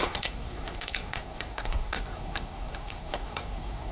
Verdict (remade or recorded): remade